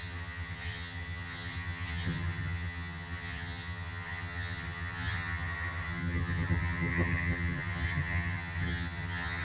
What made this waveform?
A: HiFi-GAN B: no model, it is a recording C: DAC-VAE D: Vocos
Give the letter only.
A